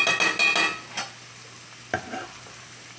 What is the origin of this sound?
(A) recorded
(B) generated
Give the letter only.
A